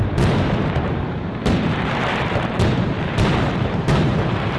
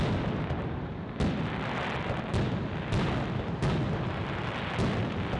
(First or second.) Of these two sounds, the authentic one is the second